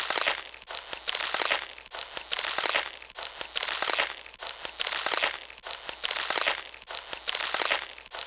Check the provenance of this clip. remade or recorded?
recorded